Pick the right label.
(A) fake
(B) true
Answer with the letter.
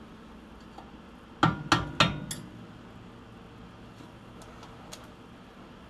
B